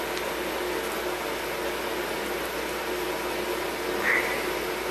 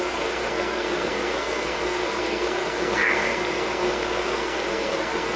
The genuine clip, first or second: first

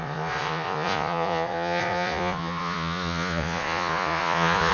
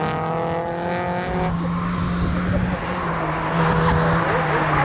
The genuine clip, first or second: second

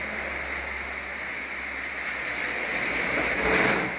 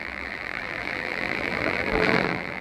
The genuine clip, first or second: first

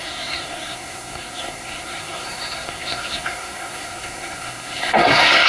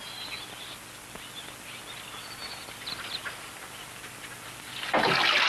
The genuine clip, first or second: second